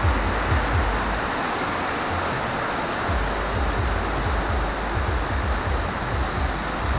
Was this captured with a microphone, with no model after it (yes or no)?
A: yes